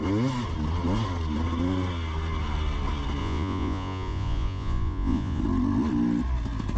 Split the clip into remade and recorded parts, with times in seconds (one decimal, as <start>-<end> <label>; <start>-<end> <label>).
0.0-3.2 recorded; 3.2-5.4 remade; 5.4-6.8 recorded